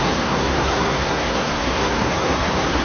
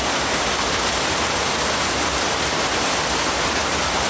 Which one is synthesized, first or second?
first